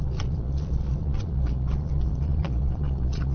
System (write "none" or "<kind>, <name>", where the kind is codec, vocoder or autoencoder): vocoder, Vocos